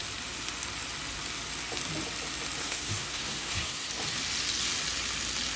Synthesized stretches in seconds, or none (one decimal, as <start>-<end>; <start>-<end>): 2.6-3.9